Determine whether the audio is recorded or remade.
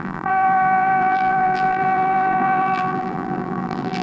remade